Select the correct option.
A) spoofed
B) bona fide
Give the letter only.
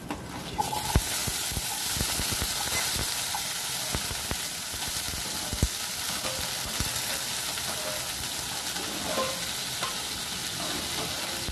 B